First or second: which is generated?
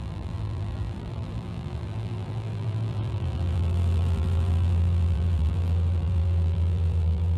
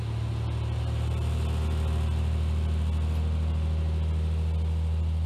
first